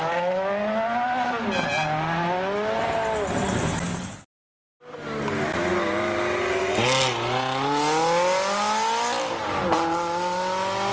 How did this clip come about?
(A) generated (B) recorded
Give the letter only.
B